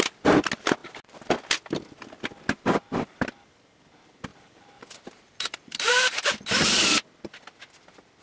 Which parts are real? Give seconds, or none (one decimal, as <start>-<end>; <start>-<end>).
0.0-4.3; 5.9-8.2